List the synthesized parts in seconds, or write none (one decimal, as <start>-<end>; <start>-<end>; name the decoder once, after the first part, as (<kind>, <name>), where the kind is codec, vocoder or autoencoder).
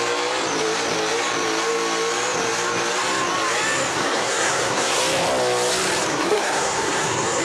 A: 3.9-5.0 (codec, SNAC); 6.1-7.4